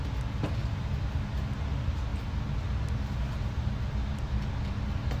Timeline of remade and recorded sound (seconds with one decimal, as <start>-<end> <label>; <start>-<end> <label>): 0.0-5.2 recorded